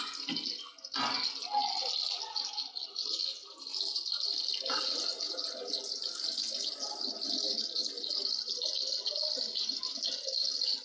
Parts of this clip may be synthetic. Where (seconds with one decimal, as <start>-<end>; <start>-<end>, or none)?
none